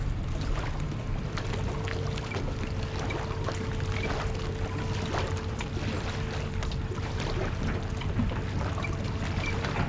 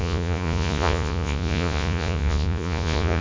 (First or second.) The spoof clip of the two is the second